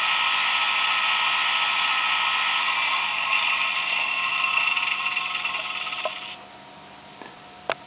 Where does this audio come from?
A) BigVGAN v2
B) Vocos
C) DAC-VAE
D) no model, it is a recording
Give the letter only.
D